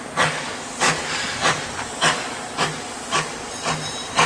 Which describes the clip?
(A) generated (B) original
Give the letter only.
B